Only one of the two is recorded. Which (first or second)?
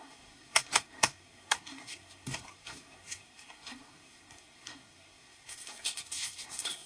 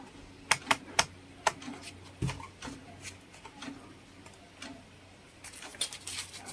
second